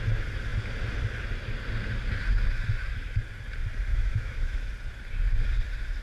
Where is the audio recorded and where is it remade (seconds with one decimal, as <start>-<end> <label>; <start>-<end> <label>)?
0.0-3.9 recorded; 3.9-4.7 remade; 4.7-6.0 recorded